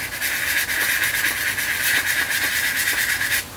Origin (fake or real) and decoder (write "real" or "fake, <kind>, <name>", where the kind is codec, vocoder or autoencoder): real